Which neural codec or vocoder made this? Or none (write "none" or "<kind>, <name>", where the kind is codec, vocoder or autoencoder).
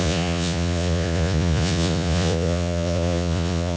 vocoder, Vocos